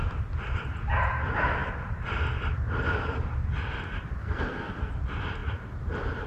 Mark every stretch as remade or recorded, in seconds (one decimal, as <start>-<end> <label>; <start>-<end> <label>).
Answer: 0.0-4.2 recorded; 4.2-4.9 remade; 4.9-6.3 recorded